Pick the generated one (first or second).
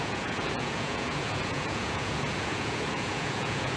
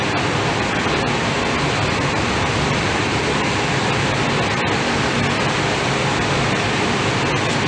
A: first